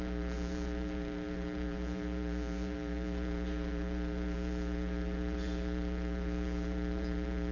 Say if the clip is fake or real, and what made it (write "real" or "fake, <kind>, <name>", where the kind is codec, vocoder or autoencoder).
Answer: fake, vocoder, BigVGAN v2